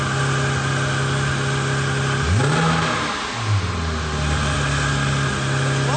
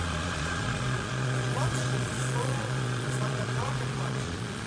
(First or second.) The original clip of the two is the first